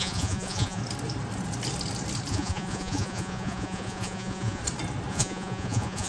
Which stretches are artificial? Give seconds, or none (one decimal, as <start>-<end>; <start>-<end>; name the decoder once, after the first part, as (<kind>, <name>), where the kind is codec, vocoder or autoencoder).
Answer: 0.0-0.8 (vocoder, Vocos); 2.3-4.6; 5.1-6.1